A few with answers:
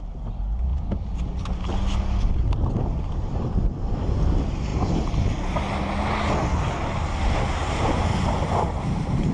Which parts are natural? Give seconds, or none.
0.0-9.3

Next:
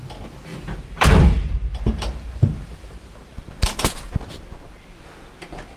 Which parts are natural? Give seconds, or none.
0.0-0.5; 4.0-5.8